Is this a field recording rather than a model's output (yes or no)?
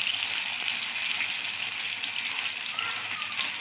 yes